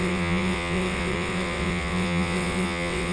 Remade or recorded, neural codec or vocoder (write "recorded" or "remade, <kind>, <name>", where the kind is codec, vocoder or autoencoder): remade, vocoder, WaveNeXt